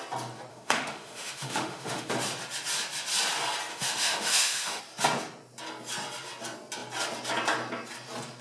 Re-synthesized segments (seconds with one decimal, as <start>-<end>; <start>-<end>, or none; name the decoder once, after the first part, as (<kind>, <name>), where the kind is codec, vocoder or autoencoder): 0.5-2.1 (autoencoder, DAC-VAE); 3.7-4.8